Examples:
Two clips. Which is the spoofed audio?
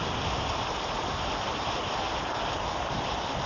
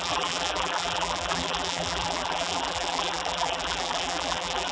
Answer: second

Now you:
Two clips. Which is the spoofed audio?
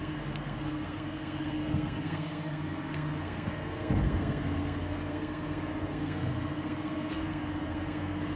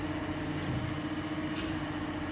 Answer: first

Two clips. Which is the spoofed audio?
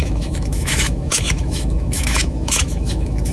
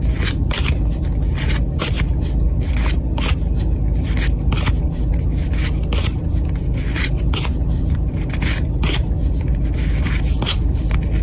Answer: first